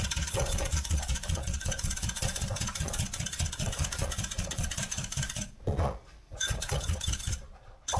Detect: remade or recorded remade